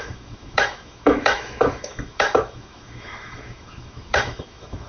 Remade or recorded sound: remade